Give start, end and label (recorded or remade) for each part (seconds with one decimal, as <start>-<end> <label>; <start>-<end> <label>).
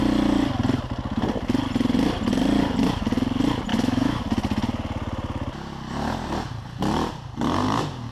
0.0-3.7 recorded; 3.7-4.2 remade; 4.2-8.1 recorded